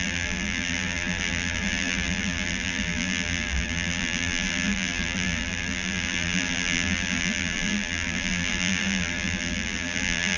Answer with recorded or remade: remade